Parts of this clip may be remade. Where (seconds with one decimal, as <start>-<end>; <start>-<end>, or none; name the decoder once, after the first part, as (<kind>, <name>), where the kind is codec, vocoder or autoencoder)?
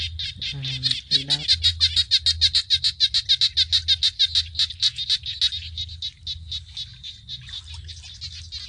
none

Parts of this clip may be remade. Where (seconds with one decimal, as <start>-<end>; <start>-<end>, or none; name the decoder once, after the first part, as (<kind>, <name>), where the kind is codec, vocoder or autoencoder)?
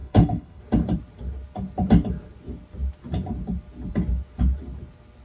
0.0-0.6 (codec, HILCodec)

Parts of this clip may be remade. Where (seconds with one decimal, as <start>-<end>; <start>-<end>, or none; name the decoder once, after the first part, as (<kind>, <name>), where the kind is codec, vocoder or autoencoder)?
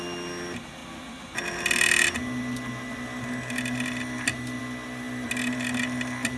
none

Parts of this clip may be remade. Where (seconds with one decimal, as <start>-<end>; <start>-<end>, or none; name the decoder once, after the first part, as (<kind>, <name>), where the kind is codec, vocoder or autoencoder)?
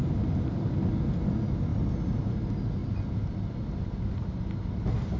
none